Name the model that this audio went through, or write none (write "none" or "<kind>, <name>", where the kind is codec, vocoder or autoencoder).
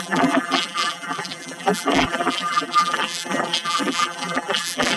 vocoder, BigVGAN v2